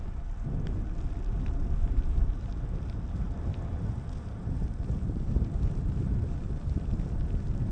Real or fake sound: real